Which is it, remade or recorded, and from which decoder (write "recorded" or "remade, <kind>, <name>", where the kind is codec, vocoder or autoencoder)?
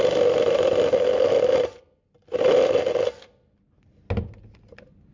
recorded